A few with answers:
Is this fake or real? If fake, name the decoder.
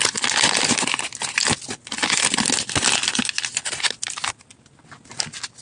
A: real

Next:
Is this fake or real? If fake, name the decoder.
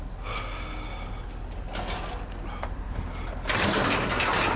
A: real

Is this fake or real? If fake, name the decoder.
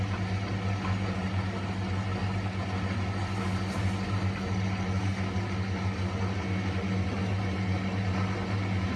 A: real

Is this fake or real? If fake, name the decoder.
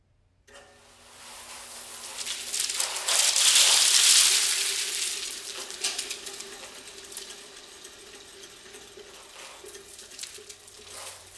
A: real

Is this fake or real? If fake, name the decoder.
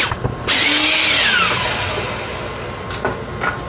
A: real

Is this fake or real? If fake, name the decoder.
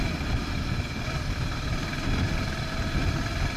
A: real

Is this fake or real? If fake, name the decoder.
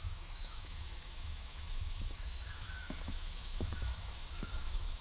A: fake, autoencoder, DAC-VAE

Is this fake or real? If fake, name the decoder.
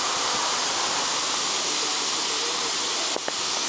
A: real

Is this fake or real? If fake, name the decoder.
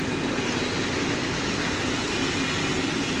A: real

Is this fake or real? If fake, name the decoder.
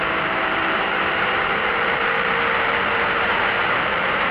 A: fake, vocoder, BigVGAN v2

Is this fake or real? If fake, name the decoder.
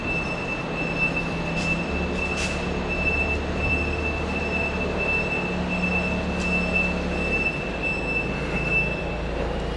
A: real